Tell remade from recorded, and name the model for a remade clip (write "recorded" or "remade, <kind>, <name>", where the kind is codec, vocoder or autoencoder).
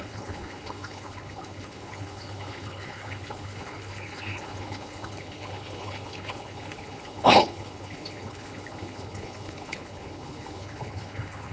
remade, codec, HILCodec